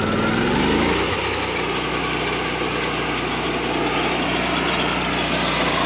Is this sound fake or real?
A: real